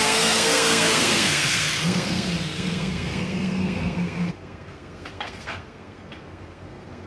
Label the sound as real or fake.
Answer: fake